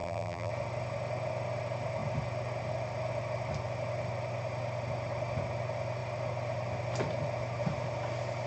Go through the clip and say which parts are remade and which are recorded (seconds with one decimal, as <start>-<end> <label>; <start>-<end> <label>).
0.0-0.5 remade; 0.5-8.5 recorded